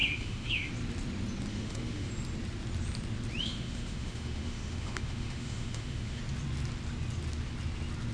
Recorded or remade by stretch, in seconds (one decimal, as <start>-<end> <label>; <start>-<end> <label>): 0.0-0.7 remade; 0.7-1.5 recorded; 1.5-2.1 remade; 2.1-3.4 recorded; 3.4-6.2 remade; 6.2-8.1 recorded